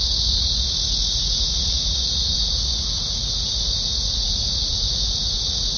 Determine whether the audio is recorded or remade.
remade